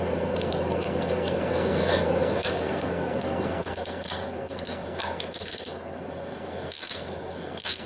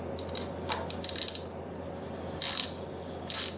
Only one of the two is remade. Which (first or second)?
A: first